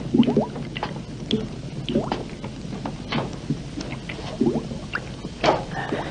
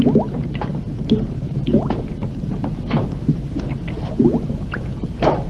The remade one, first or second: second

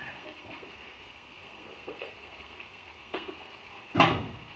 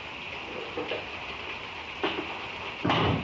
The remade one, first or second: first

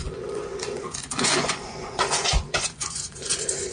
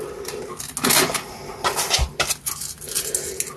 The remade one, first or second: first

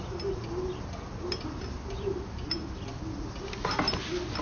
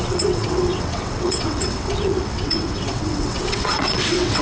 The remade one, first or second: second